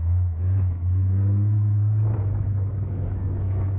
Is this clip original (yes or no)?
no